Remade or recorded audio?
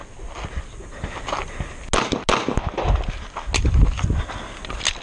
recorded